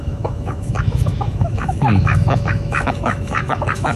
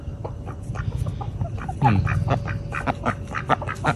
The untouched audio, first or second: second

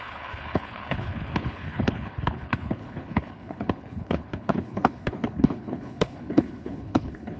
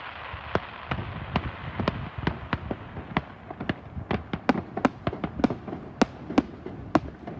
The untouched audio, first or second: second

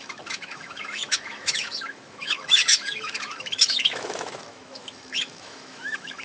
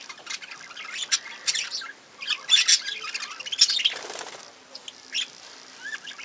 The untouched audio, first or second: second